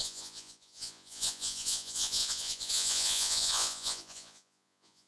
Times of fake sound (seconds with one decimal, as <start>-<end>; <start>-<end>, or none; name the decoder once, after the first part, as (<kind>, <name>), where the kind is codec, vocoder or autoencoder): 0.0-5.1 (vocoder, Vocos)